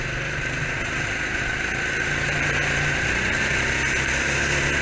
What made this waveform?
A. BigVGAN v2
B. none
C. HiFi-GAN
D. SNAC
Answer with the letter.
B